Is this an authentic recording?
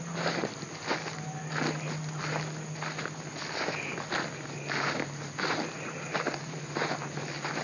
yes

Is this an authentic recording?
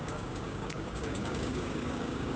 no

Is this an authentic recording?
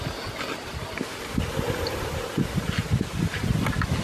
yes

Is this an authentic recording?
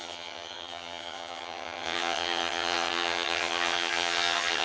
no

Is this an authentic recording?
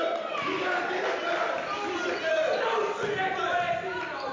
no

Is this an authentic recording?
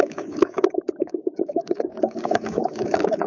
no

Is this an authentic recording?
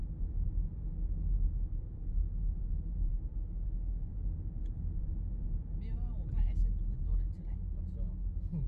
yes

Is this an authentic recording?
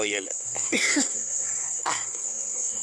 no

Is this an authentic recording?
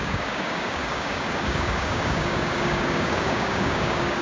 no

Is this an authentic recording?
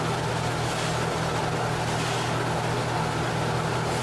yes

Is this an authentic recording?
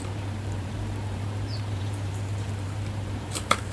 no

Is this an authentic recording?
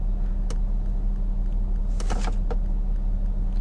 yes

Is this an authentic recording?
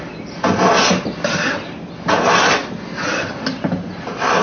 yes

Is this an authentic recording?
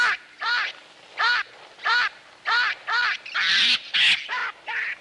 yes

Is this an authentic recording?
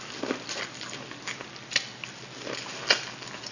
yes